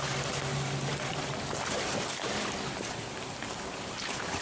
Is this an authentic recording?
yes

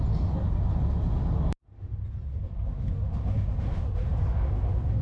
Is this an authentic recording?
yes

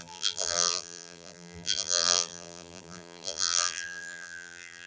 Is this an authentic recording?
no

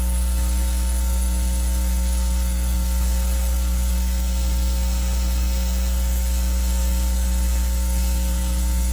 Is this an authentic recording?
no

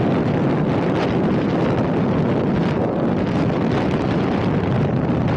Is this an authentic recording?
yes